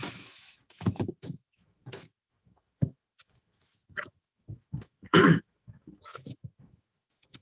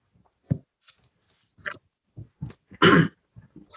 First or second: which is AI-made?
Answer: first